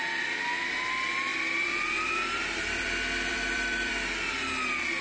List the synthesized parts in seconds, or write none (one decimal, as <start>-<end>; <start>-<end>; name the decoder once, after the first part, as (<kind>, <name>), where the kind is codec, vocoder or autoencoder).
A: 1.3-4.3 (vocoder, BigVGAN v2)